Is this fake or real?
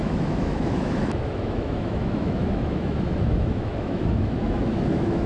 fake